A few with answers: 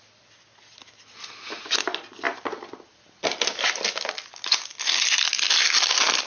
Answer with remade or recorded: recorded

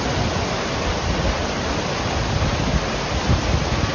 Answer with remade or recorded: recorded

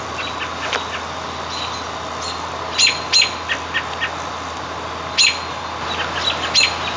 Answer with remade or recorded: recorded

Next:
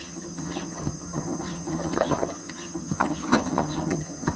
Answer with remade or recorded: remade